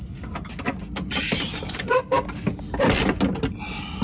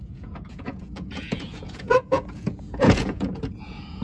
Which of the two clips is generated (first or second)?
second